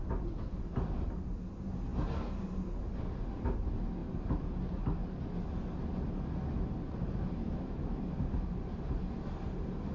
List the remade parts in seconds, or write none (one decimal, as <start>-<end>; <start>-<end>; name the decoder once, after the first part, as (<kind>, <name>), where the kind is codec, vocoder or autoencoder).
none